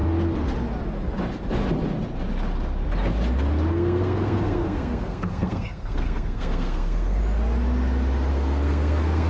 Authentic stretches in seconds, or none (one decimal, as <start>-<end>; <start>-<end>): 0.0-3.7; 7.2-8.3